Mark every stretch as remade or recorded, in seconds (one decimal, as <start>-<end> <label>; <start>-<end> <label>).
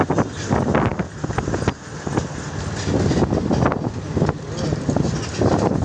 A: 0.0-5.8 recorded